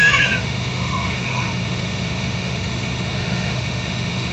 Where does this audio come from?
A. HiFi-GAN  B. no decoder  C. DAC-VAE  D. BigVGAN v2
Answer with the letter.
C